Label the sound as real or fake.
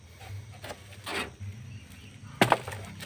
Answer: real